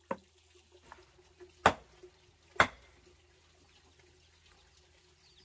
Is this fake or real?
real